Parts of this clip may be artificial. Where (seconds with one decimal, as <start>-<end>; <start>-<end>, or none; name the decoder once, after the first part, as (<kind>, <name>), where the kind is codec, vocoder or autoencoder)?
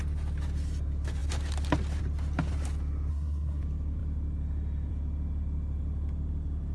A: 3.1-3.6 (codec, SNAC)